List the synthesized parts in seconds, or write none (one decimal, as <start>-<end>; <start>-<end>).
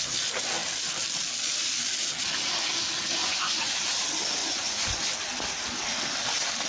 3.2-3.8; 4.4-5.0